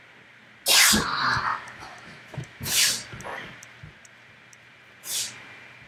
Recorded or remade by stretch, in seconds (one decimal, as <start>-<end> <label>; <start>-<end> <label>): 0.0-1.5 recorded; 1.5-2.7 remade; 2.7-5.9 recorded